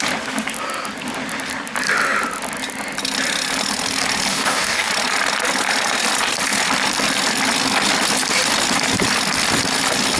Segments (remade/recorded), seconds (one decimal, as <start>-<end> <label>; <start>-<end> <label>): 0.0-4.3 recorded; 4.3-4.9 remade; 4.9-10.2 recorded